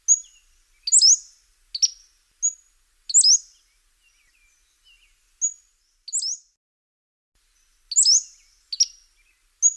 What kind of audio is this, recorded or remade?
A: recorded